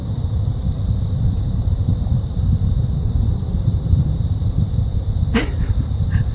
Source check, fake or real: fake